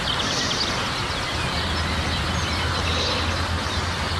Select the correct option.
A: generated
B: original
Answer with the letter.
B